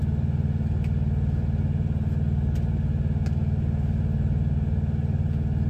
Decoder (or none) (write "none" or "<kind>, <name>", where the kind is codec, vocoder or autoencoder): none